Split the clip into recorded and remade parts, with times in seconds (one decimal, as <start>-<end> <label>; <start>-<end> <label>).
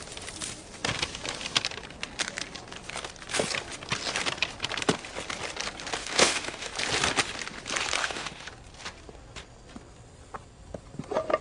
0.0-6.0 recorded; 6.0-6.7 remade; 6.7-8.0 recorded; 8.0-8.5 remade; 8.5-11.4 recorded